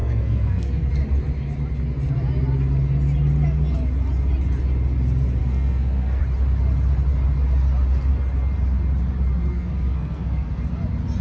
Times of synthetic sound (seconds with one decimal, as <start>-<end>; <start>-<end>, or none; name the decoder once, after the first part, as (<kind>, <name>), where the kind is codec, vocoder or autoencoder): 0.0-0.9 (codec, SNAC); 5.4-6.2; 9.5-10.6